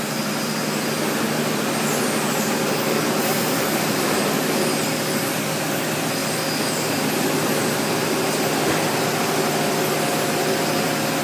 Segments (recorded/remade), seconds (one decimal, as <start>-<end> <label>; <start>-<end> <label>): 0.0-3.3 recorded; 3.3-4.2 remade; 4.2-11.2 recorded